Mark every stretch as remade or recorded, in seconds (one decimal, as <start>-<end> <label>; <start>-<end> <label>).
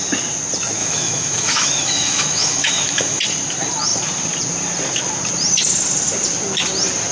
0.0-0.8 recorded; 0.8-3.2 remade; 3.2-7.1 recorded